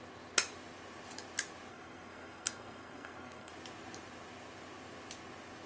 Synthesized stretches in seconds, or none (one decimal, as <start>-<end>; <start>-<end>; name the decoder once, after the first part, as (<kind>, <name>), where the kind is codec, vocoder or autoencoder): 1.7-3.5 (codec, SNAC)